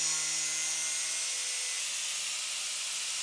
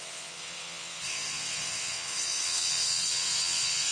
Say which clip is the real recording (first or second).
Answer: first